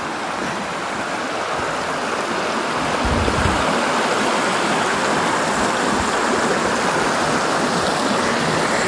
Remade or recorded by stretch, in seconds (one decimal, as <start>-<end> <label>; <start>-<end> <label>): 0.0-8.9 recorded